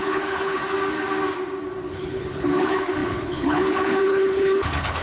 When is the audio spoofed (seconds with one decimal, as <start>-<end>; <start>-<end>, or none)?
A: 0.0-0.6; 1.9-5.0